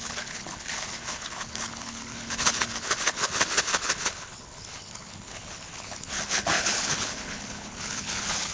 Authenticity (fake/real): fake